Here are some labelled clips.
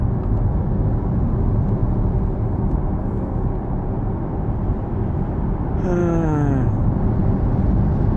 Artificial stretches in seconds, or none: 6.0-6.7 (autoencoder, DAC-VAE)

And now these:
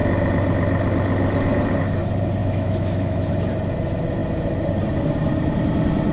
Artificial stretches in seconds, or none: 2.4-3.3 (autoencoder, DAC-VAE)

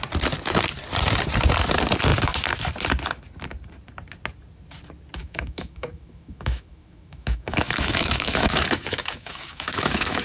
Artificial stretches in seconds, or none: 5.2-10.2 (autoencoder, DAC-VAE)

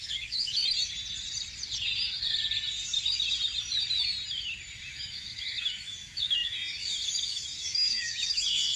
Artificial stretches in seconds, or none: 0.0-0.6 (autoencoder, DAC-VAE); 4.9-8.8

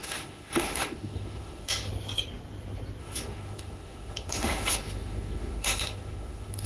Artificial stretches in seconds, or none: 0.0-1.9 (autoencoder, DAC-VAE); 3.0-6.7

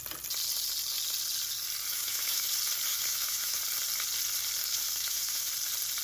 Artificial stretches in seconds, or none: 1.9-2.5 (autoencoder, DAC-VAE); 2.9-3.6; 4.6-5.5

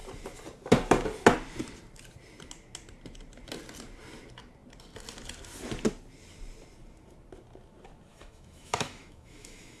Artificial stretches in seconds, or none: 8.1-9.8 (autoencoder, DAC-VAE)